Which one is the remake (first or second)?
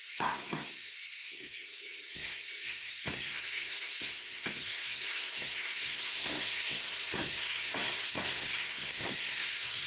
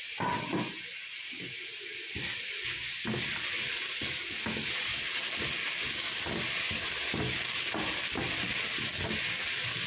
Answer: first